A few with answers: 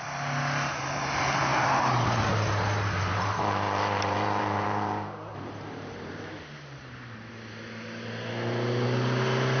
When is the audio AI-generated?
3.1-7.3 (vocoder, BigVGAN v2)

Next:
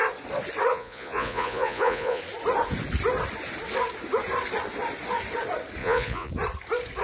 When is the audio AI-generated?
0.7-2.2 (vocoder, Vocos); 5.8-6.3

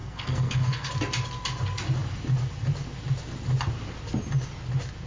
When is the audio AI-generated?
0.0-0.9 (codec, SNAC)

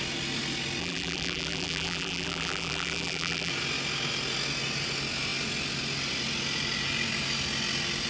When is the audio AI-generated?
0.8-3.5 (vocoder, BigVGAN v2)

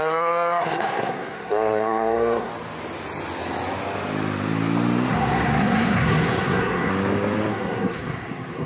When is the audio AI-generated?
0.0-2.5 (codec, SNAC); 5.1-6.9; 7.5-8.7

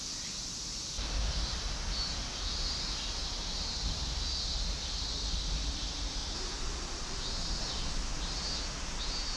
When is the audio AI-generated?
6.2-7.6 (vocoder, BigVGAN v2)